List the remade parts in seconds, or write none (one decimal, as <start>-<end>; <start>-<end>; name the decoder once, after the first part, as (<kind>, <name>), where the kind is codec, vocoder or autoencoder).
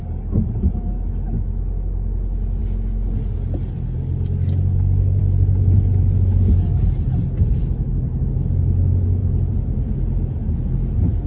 9.2-10.0 (vocoder, BigVGAN v2)